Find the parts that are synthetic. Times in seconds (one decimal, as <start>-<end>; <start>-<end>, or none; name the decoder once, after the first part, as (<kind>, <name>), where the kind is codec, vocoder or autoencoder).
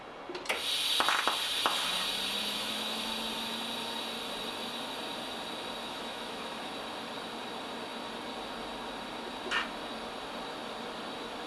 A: 2.4-3.1 (autoencoder, DAC-VAE); 5.8-6.7